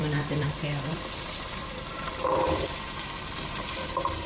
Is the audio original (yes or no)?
no